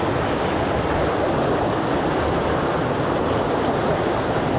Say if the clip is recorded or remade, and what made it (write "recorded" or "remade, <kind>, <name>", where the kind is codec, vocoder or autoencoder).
recorded